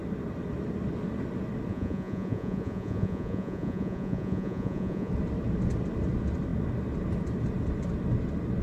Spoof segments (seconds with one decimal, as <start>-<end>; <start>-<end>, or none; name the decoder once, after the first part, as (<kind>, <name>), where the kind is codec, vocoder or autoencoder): 1.7-5.1 (vocoder, Vocos)